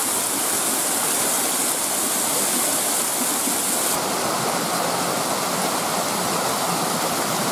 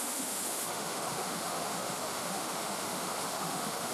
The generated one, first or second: second